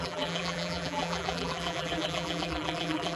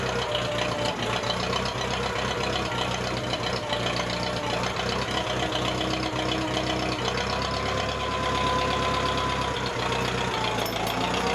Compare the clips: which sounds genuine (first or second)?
second